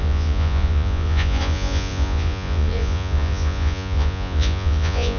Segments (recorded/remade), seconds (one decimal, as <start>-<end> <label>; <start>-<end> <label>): 0.0-5.2 remade